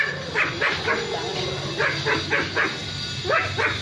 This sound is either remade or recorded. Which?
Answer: recorded